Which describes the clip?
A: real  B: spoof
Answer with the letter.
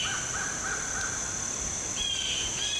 A